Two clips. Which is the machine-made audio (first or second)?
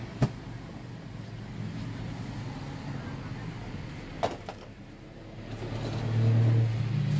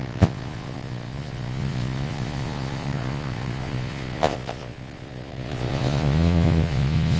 second